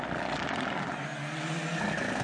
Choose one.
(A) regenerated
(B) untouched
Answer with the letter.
B